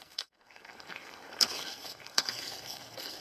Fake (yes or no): yes